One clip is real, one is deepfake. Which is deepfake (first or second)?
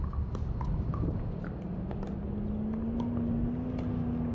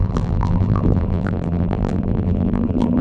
second